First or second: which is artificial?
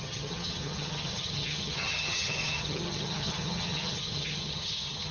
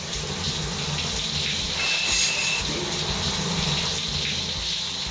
first